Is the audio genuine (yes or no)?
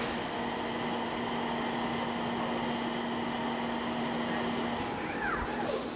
yes